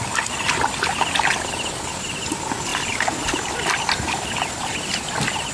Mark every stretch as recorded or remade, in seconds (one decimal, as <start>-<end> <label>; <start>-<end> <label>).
0.0-5.5 recorded